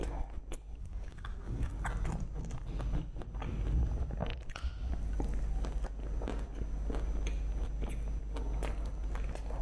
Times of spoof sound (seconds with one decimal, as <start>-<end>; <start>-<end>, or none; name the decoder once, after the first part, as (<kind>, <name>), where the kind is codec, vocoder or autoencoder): 0.8-1.7 (codec, DAC)